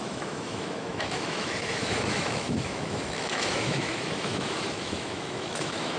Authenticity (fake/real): fake